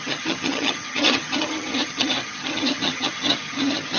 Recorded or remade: remade